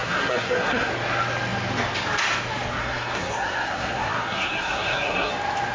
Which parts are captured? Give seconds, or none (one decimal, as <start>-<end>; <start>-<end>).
0.9-2.8; 5.3-5.7